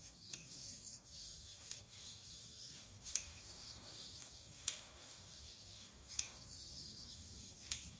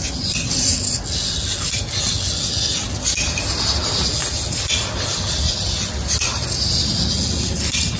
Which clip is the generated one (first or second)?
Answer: first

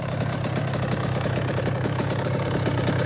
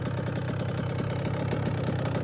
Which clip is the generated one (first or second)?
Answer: first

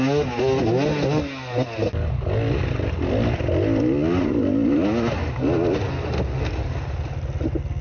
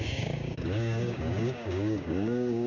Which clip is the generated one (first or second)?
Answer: second